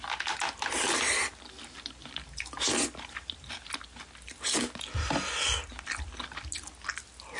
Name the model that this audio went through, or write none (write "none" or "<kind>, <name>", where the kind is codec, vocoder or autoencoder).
none